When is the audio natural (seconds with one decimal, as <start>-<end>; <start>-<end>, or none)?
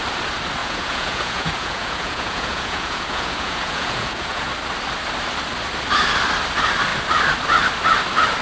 0.0-0.6; 4.5-8.4